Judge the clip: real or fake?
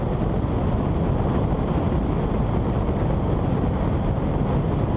real